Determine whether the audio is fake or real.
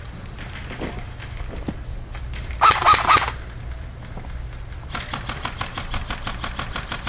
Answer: real